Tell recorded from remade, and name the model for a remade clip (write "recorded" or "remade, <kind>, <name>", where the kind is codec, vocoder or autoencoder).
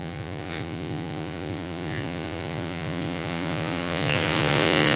remade, vocoder, Vocos